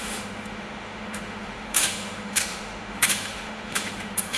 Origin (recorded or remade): remade